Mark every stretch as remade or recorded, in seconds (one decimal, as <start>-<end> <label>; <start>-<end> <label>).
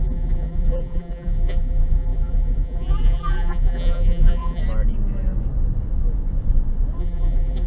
0.0-4.6 remade; 4.6-7.0 recorded; 7.0-7.7 remade